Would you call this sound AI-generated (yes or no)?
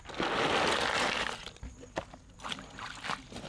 no